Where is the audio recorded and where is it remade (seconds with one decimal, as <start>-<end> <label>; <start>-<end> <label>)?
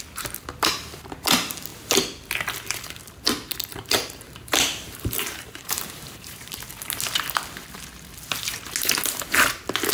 0.0-3.7 recorded; 3.7-6.5 remade; 6.5-9.9 recorded